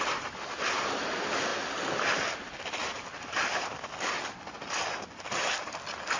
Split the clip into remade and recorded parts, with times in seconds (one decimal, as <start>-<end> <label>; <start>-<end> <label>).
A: 0.0-6.2 recorded